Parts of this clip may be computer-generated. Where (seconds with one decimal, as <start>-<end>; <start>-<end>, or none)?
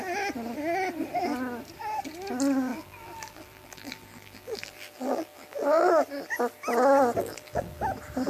2.7-5.9; 7.2-7.8